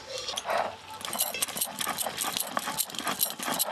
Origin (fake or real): real